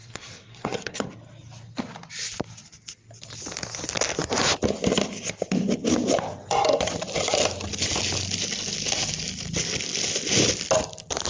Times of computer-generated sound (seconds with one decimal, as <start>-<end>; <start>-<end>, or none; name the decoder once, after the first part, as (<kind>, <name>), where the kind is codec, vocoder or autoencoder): 0.0-1.1 (codec, SNAC)